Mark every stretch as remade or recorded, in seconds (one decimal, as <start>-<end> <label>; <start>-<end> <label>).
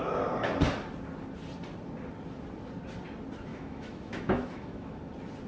0.0-3.5 recorded; 3.5-5.0 remade; 5.0-5.5 recorded